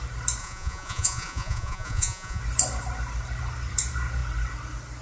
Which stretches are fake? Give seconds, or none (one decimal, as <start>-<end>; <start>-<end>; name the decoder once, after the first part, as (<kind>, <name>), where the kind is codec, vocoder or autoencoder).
0.4-2.4 (vocoder, Vocos)